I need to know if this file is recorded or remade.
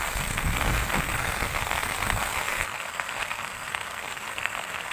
remade